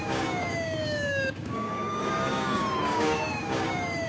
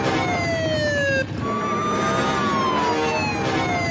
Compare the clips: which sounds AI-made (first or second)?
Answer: first